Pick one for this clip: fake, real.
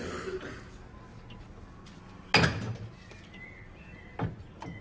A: real